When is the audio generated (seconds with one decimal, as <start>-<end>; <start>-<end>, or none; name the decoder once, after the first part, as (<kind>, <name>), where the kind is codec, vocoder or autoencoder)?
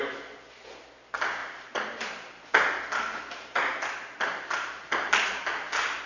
none